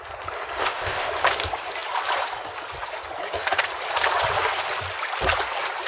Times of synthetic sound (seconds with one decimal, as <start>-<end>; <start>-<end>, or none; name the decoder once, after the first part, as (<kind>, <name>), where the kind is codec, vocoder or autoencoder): 0.6-1.1 (codec, ZipCodec)